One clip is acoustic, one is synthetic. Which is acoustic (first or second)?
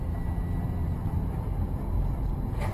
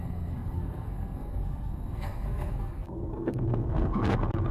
first